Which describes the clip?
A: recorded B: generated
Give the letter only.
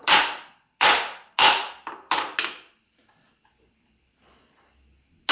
A